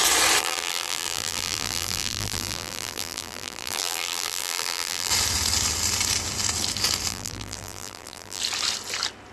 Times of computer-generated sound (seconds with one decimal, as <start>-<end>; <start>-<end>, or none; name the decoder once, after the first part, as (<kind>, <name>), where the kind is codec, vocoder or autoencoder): 0.4-5.1 (vocoder, BigVGAN v2); 7.1-8.4